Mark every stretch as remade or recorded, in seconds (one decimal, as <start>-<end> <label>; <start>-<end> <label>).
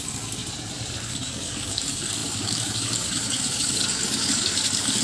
0.0-0.4 remade; 0.4-1.0 recorded; 1.0-5.0 remade